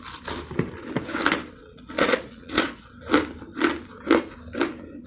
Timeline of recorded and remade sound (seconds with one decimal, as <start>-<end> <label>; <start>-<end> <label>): 0.0-1.6 recorded; 1.6-2.9 remade; 2.9-5.1 recorded